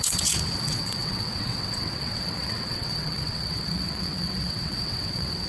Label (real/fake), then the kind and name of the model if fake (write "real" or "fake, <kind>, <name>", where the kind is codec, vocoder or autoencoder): fake, vocoder, WaveNeXt